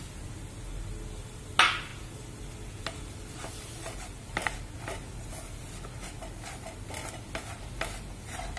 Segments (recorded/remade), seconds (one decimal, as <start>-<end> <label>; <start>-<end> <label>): 0.0-8.6 recorded